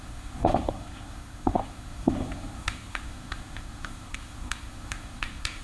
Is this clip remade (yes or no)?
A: yes